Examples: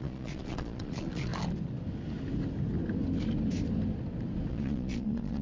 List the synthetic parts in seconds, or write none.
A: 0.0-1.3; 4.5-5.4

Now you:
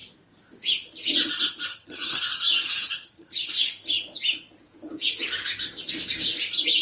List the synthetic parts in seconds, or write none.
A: 1.7-3.5